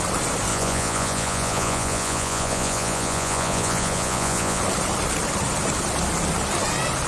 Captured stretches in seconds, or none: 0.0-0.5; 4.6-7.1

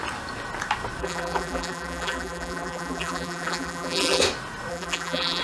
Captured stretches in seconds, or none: 0.0-1.0; 4.2-4.7

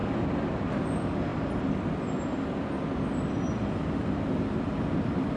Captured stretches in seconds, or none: 0.0-5.4